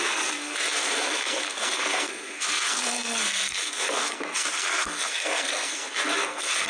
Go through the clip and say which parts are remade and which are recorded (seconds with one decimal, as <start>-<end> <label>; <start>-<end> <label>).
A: 0.0-6.7 remade

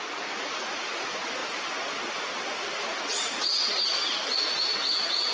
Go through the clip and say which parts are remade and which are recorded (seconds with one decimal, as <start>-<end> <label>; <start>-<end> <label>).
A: 0.0-5.3 recorded

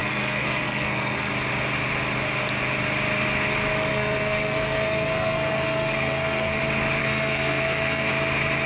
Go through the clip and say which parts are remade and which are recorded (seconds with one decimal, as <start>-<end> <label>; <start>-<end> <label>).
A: 0.0-1.3 remade; 1.3-3.9 recorded; 3.9-6.6 remade; 6.6-7.0 recorded; 7.0-8.1 remade; 8.1-8.7 recorded

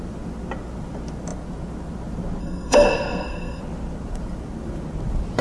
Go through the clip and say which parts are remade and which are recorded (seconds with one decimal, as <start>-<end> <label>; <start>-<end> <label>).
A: 0.0-2.4 recorded; 2.4-3.6 remade; 3.6-5.4 recorded